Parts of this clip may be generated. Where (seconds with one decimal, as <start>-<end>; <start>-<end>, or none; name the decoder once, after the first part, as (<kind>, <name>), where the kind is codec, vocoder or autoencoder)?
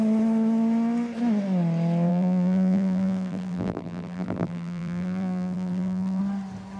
2.1-6.2 (vocoder, BigVGAN v2)